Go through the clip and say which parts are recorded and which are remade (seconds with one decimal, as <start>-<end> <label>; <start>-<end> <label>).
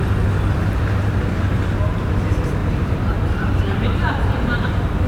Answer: 0.0-0.6 recorded; 0.6-1.6 remade; 1.6-2.6 recorded; 2.6-4.1 remade; 4.1-5.1 recorded